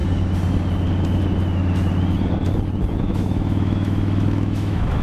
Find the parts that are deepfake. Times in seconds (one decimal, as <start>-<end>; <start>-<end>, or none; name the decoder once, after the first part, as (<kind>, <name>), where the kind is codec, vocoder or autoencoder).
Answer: 3.0-5.0 (autoencoder, DAC-VAE)